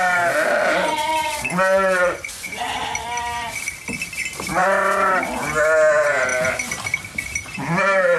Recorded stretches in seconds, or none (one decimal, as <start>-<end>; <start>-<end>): 0.0-1.2; 2.5-8.2